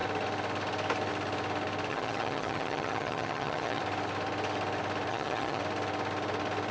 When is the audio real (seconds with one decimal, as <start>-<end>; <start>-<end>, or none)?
0.0-1.9; 3.8-5.1; 5.6-6.7